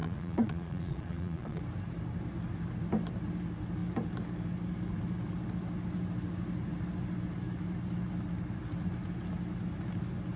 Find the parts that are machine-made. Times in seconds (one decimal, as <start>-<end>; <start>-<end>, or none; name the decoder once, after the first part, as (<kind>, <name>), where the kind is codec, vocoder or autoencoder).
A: 0.0-1.6 (vocoder, Vocos)